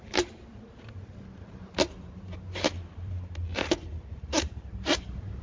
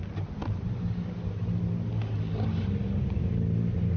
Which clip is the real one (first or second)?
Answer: second